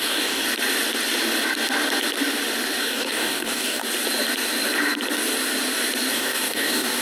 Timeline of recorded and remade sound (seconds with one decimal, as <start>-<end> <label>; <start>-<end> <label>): 0.0-0.4 remade; 0.4-2.8 recorded; 2.8-3.8 remade; 3.8-6.1 recorded; 6.1-7.0 remade